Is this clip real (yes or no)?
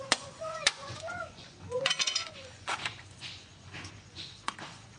no